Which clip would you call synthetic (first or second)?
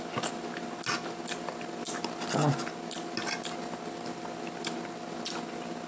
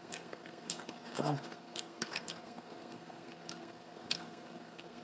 second